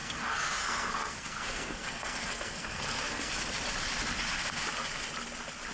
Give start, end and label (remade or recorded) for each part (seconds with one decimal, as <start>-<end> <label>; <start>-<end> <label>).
0.0-3.3 remade; 3.3-5.7 recorded